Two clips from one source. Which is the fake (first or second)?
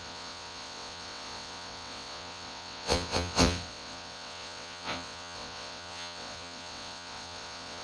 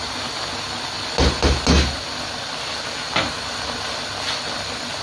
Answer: first